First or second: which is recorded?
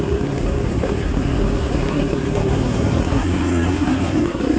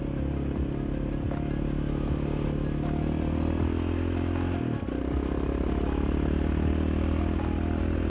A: second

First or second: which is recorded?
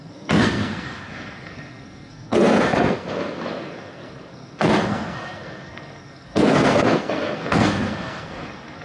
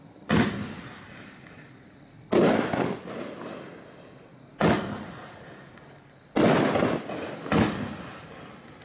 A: second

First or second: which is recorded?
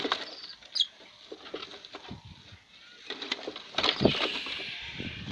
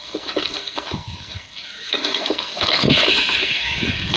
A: first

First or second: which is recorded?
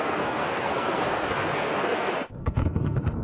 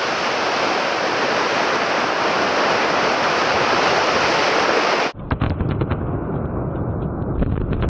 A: second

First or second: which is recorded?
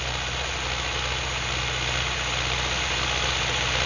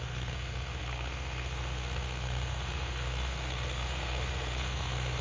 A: first